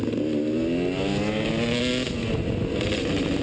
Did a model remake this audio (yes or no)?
no